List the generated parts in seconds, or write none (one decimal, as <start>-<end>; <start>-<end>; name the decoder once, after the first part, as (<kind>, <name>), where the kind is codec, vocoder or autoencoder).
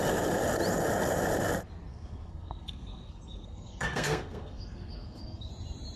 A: 1.9-5.5 (codec, SNAC)